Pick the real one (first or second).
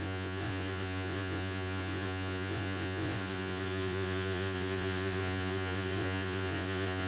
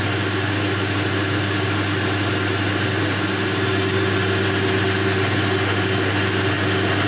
second